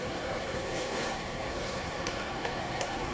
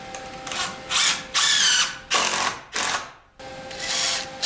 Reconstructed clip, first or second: first